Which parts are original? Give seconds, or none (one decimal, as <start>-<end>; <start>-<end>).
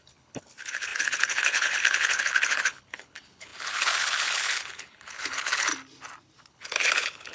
5.7-6.4